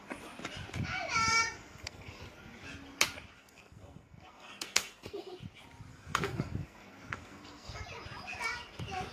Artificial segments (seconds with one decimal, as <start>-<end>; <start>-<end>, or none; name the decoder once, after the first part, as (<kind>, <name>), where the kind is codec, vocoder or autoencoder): 1.3-2.2 (codec, SNAC); 3.4-5.3; 5.9-7.8